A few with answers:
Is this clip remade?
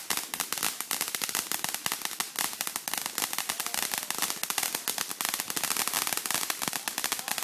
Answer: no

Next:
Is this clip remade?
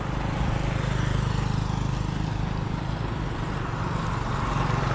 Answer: no